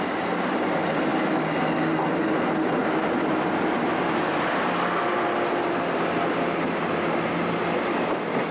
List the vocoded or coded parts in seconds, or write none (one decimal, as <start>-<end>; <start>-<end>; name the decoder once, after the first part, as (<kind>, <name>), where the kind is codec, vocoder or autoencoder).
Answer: none